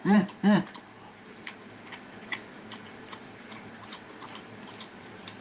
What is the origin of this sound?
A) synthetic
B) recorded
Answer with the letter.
A